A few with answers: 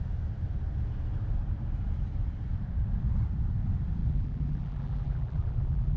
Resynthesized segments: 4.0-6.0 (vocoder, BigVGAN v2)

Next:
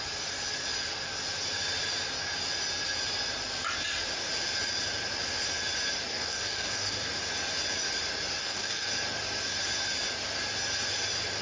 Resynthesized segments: 6.1-7.1 (codec, DAC); 8.4-8.9